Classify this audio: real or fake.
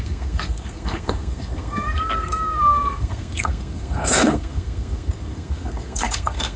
fake